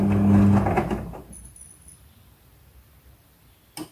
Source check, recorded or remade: recorded